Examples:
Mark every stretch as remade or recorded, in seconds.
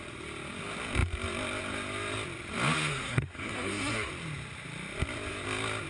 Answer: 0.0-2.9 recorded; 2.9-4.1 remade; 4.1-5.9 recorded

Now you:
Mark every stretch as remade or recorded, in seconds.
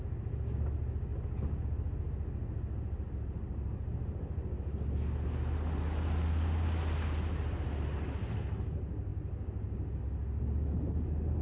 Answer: 0.0-11.4 recorded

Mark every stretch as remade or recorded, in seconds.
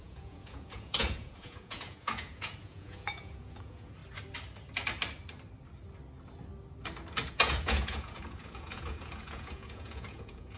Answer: 0.0-4.0 remade; 4.0-7.3 recorded; 7.3-10.6 remade